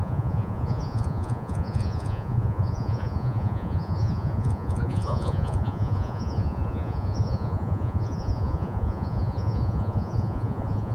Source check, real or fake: fake